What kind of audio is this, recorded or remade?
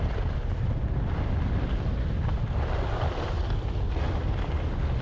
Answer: recorded